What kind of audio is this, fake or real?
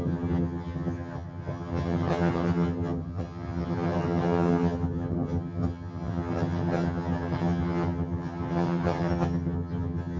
fake